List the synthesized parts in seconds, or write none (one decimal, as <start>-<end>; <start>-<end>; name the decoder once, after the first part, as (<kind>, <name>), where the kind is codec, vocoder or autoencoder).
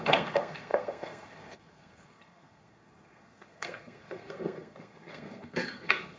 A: 0.0-6.2 (codec, SNAC)